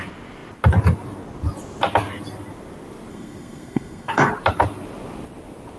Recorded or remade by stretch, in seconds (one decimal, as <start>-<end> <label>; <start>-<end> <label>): 0.0-3.1 recorded; 3.1-4.3 remade; 4.3-5.8 recorded